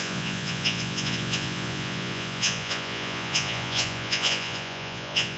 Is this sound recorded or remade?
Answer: remade